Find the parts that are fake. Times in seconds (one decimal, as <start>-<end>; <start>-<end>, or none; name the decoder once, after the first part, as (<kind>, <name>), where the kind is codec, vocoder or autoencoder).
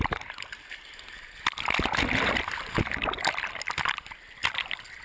none